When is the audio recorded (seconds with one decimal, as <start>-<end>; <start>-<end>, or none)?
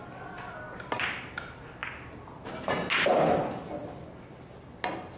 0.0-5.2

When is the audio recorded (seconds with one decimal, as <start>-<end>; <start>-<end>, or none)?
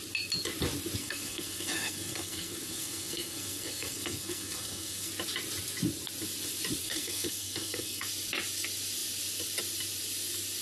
0.0-1.0; 5.1-6.8; 8.1-10.6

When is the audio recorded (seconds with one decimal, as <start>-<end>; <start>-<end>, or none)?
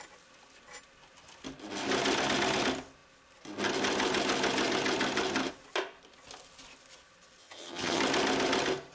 0.0-7.4; 8.0-8.9